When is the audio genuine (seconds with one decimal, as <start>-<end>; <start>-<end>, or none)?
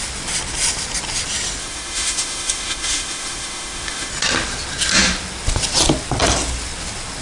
0.0-1.6; 4.1-7.2